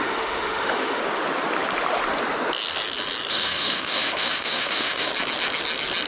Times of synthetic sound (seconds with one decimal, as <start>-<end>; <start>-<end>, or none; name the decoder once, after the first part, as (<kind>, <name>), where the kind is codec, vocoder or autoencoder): 0.0-1.0 (autoencoder, DAC-VAE); 3.3-5.1